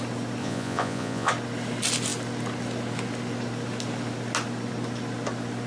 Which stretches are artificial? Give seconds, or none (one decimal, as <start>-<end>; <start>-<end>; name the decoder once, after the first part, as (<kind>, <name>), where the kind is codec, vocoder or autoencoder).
0.4-1.3 (vocoder, Vocos)